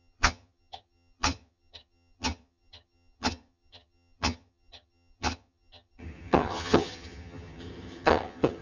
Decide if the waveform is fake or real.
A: fake